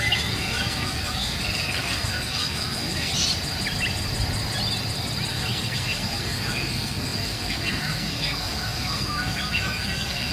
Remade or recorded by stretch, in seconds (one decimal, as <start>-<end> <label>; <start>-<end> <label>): 0.0-3.1 remade; 3.1-5.3 recorded; 5.3-10.3 remade